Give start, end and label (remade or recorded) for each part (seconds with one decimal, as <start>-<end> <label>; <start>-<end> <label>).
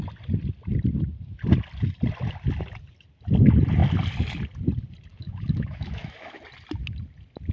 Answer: 0.0-5.1 recorded; 5.1-6.4 remade; 6.4-7.5 recorded